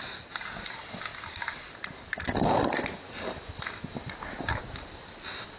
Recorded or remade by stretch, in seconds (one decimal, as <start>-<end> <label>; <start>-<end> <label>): 0.0-5.6 recorded